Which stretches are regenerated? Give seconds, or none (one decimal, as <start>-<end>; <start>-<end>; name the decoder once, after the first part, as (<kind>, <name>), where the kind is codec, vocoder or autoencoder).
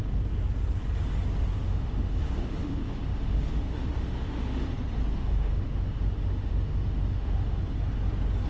1.5-4.7 (autoencoder, DAC-VAE); 5.2-7.6